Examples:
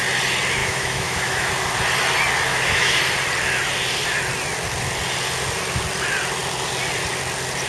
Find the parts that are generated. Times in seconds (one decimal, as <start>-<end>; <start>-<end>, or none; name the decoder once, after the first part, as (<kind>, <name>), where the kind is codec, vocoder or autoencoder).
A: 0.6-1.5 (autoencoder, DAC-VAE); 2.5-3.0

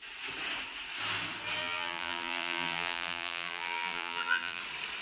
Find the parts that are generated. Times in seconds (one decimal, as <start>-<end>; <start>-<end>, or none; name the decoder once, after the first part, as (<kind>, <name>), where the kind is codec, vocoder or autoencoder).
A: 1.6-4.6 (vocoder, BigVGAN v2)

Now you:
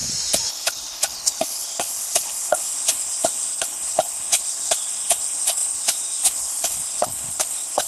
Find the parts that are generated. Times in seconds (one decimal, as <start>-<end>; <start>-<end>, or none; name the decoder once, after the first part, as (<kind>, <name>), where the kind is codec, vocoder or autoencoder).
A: 0.5-7.9 (codec, HILCodec)

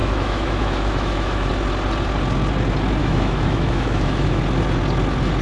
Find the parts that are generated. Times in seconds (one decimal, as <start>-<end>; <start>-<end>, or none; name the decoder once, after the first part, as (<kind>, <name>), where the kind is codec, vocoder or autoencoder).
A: 0.0-1.5 (autoencoder, DAC-VAE); 3.0-4.4